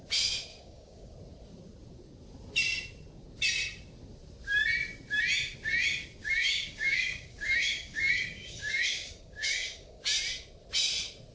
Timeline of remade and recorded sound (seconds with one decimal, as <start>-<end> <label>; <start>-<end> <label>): 0.0-0.5 recorded; 0.5-1.1 remade; 1.1-6.2 recorded; 6.2-10.0 remade; 10.0-11.3 recorded